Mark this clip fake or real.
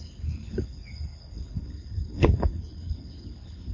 fake